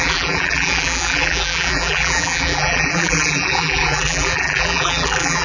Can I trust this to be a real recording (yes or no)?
no